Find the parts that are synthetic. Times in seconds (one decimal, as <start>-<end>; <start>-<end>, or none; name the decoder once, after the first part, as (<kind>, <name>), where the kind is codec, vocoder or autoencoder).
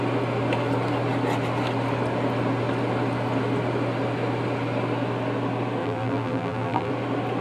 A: 5.8-6.9 (vocoder, BigVGAN v2)